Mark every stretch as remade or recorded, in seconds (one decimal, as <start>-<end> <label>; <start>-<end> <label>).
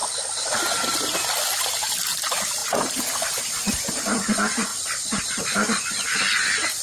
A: 0.0-6.8 recorded